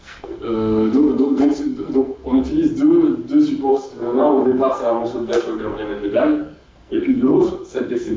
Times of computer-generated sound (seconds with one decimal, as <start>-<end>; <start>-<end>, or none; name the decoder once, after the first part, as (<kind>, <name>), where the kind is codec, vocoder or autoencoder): 0.0-2.5 (codec, SNAC); 3.6-8.2

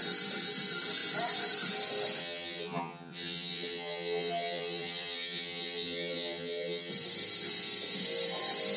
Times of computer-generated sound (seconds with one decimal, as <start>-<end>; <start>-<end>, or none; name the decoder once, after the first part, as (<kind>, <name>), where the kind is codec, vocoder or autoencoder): 2.2-6.9 (vocoder, HiFi-GAN)

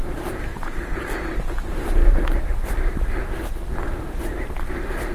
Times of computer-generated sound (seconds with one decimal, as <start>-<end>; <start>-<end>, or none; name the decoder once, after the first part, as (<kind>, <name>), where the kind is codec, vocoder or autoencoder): 0.5-1.4 (vocoder, BigVGAN v2)